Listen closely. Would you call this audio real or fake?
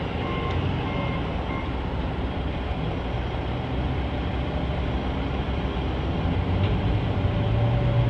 real